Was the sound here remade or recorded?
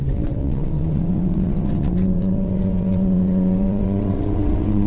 remade